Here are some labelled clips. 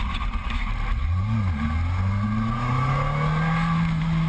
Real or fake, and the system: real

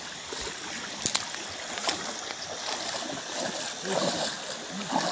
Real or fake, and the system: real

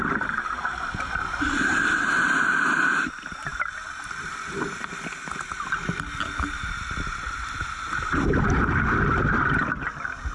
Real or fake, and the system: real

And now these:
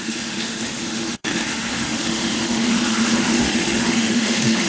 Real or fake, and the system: fake, autoencoder, DAC-VAE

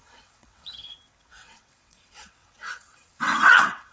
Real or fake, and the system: fake, vocoder, WaveNeXt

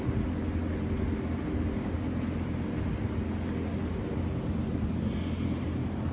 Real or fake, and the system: real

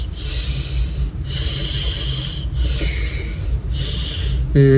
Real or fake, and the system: real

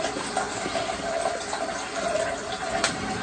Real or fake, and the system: real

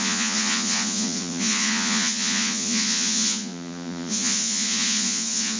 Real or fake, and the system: fake, vocoder, Vocos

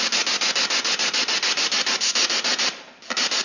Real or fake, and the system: real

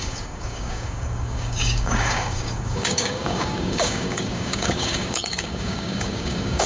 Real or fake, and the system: fake, codec, DAC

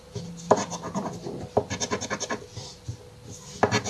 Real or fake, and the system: real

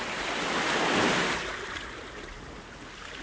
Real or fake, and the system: real